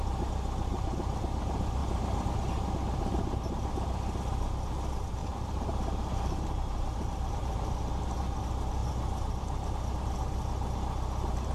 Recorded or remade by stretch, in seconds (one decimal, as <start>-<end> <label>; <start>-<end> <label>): 0.0-0.7 recorded; 0.7-1.2 remade; 1.2-1.8 recorded; 1.8-2.4 remade; 2.4-5.2 recorded; 5.2-7.9 remade; 7.9-11.5 recorded